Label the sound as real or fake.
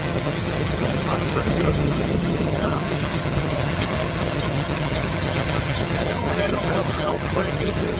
fake